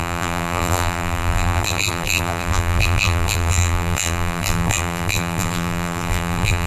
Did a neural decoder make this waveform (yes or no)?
yes